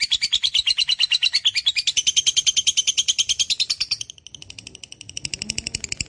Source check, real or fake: real